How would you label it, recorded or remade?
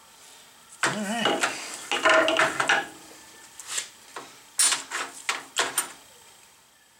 recorded